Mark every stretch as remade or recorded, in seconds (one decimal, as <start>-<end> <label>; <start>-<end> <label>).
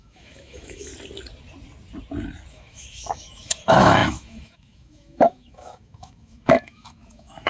0.0-0.9 remade; 0.9-2.5 recorded; 2.5-7.5 remade